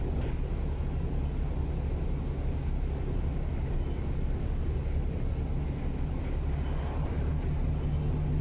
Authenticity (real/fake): real